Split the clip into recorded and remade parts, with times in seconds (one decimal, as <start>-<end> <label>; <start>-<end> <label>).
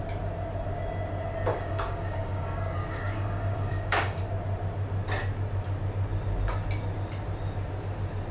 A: 0.0-1.5 recorded; 1.5-4.2 remade; 4.2-8.3 recorded